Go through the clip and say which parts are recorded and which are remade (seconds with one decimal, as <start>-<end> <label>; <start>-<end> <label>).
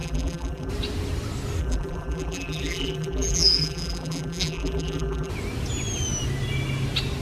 0.0-0.7 remade; 0.7-1.6 recorded; 1.6-5.3 remade; 5.3-7.2 recorded